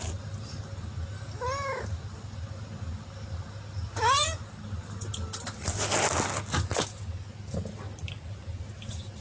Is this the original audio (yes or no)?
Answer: yes